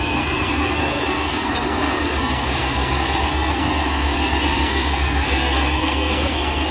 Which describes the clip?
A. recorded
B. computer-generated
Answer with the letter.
B